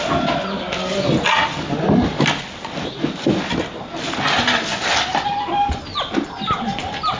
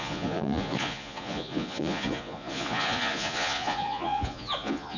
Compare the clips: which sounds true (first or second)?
first